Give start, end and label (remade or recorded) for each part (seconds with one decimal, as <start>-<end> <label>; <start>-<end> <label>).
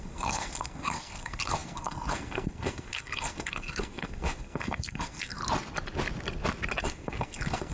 0.0-5.4 remade; 5.4-6.8 recorded; 6.8-7.7 remade